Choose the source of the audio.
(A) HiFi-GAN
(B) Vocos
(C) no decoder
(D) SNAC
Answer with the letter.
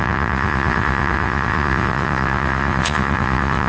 B